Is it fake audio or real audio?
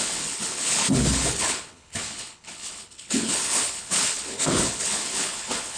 fake